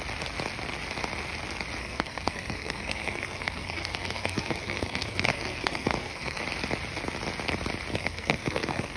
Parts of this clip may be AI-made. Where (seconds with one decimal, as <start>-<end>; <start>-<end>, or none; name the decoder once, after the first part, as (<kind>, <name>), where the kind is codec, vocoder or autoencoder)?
1.8-6.4 (codec, SNAC); 7.9-9.0